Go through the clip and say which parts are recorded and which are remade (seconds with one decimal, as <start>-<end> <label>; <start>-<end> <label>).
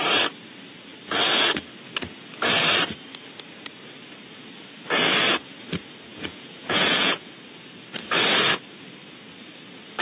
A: 0.0-6.1 recorded; 6.1-7.3 remade; 7.3-10.0 recorded